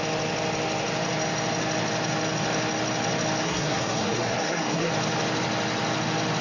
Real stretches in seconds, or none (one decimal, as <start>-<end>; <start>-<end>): 0.0-3.4; 4.9-6.4